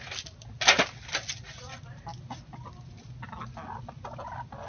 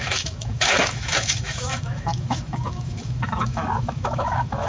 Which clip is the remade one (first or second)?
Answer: second